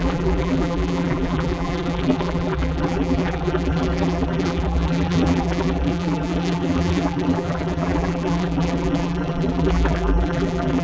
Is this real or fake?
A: fake